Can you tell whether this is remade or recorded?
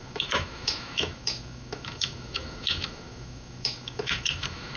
remade